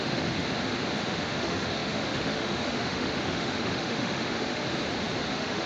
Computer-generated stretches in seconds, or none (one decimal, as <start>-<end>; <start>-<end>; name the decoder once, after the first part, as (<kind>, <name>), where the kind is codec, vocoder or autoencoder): 0.0-0.4 (autoencoder, DAC-VAE); 1.0-4.6; 5.3-5.7